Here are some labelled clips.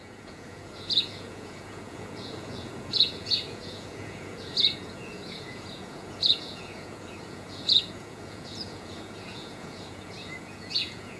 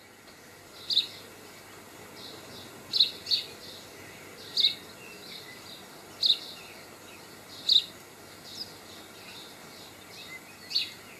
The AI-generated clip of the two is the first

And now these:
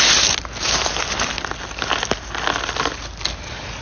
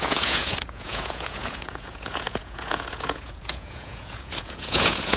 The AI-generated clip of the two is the second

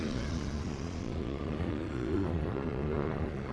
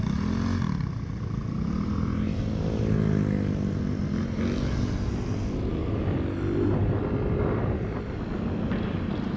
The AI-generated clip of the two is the first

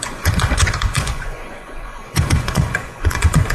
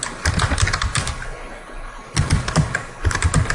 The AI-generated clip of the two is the first